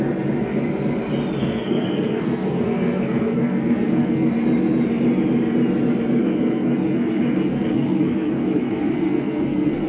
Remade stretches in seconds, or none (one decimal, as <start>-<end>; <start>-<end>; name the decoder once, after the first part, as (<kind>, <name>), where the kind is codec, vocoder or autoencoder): 1.4-4.3 (codec, SNAC); 6.2-9.9